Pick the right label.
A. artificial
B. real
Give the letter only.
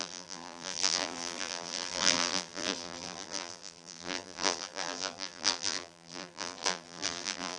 A